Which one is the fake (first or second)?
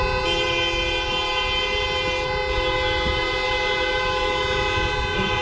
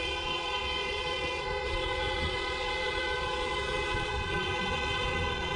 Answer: second